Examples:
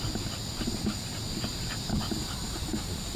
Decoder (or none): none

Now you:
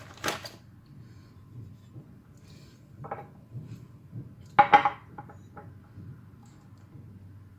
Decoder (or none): none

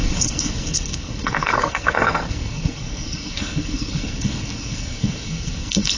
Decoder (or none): codec, SNAC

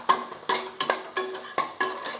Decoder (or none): none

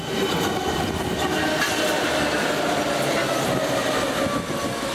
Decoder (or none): none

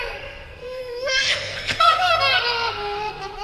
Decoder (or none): codec, SNAC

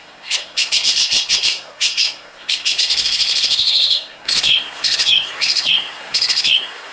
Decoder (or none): codec, SNAC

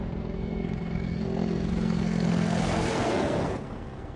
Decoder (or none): codec, SNAC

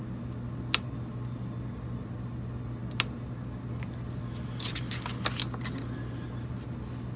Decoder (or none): none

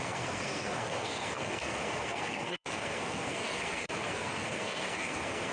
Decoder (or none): codec, SNAC